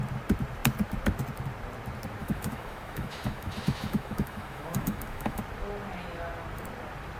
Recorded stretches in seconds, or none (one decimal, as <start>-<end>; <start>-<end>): 0.0-2.2; 5.4-7.2